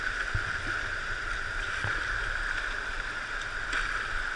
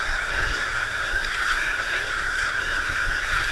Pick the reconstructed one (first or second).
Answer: second